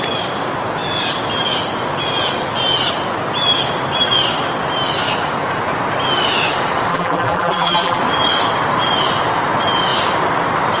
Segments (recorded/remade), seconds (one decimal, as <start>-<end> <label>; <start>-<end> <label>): 0.0-6.9 recorded; 6.9-8.0 remade; 8.0-10.8 recorded